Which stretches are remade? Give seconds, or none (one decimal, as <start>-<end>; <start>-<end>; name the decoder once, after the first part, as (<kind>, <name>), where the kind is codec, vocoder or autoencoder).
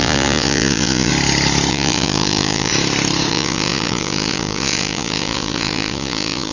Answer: 0.0-1.1 (vocoder, Vocos); 1.7-2.7; 3.3-6.5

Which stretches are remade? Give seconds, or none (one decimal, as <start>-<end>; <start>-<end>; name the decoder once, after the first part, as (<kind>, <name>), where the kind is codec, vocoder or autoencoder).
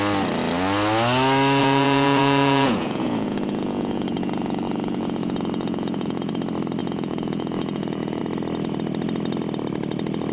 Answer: 1.6-6.3 (vocoder, Vocos); 6.8-8.2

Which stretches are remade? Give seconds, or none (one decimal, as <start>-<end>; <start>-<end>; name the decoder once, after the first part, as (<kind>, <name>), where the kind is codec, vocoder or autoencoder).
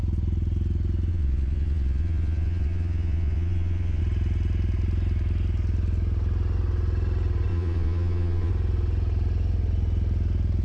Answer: 1.1-4.0 (vocoder, Vocos); 7.5-8.5